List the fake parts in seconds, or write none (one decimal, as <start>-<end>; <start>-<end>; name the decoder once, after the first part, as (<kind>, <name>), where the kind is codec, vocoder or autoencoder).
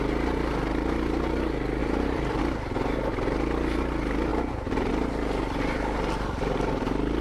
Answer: 1.8-2.4 (vocoder, BigVGAN v2)